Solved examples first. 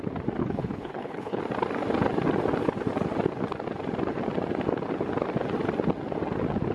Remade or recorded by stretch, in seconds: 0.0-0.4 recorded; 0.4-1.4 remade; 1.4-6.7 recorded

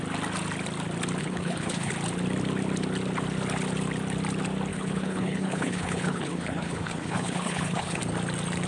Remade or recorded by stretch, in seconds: 0.0-1.2 recorded; 1.2-1.9 remade; 1.9-4.7 recorded; 4.7-8.0 remade; 8.0-8.7 recorded